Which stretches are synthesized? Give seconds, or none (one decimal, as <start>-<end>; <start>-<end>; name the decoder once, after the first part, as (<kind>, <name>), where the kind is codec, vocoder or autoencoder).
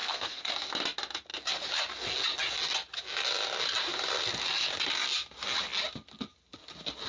0.0-0.5 (codec, SNAC)